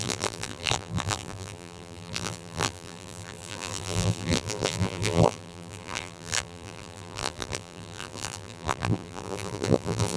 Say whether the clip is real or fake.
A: fake